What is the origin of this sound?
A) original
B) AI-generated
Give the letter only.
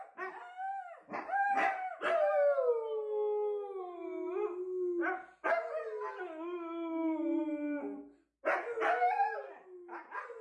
A